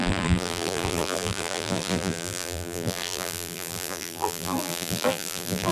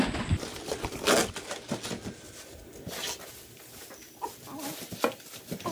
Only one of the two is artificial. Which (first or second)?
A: first